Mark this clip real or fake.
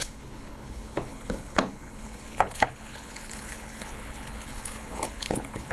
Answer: fake